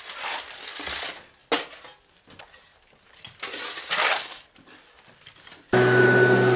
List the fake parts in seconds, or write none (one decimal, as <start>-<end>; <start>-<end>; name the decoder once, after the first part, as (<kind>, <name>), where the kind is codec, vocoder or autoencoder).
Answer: none